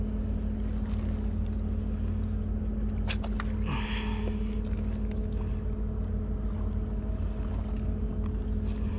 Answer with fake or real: real